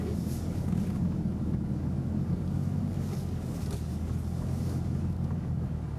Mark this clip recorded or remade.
remade